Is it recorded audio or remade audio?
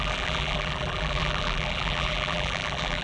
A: remade